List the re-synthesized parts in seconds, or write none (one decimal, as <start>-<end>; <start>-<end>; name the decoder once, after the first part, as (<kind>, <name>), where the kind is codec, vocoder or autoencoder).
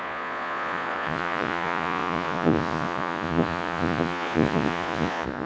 0.0-5.5 (vocoder, Vocos)